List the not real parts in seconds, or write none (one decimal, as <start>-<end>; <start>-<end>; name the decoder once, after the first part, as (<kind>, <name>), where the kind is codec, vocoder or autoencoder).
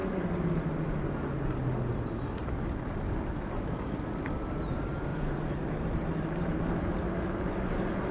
1.9-2.4 (vocoder, BigVGAN v2); 5.1-6.4